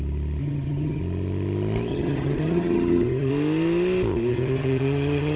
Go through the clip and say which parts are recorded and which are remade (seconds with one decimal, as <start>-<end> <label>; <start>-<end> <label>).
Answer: 0.0-0.4 recorded; 0.4-1.0 remade; 1.0-1.9 recorded; 1.9-3.3 remade; 3.3-4.3 recorded; 4.3-5.4 remade